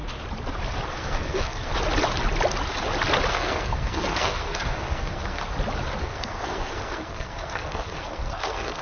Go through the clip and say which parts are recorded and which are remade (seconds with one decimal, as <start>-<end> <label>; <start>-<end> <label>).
0.0-0.9 recorded; 0.9-1.7 remade; 1.7-3.3 recorded; 3.3-5.4 remade; 5.4-6.0 recorded; 6.0-8.8 remade